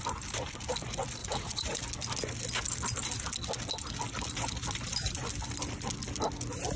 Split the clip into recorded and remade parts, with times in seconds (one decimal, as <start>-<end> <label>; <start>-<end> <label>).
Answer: 0.0-1.2 recorded; 1.2-1.8 remade; 1.8-6.8 recorded